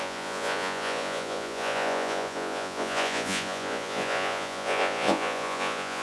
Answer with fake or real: fake